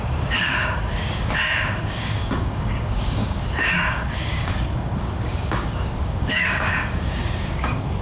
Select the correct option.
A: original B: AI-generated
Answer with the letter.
B